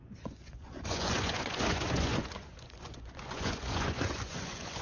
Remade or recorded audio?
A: remade